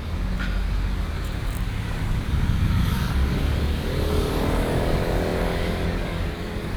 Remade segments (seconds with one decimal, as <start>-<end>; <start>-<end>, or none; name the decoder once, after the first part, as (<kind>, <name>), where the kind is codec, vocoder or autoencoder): 0.0-6.8 (codec, DAC)

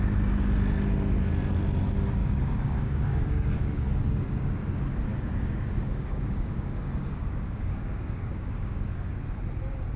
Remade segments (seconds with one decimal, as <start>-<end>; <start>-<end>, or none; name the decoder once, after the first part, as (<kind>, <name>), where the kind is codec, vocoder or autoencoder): 2.2-4.5 (codec, DAC); 5.1-9.1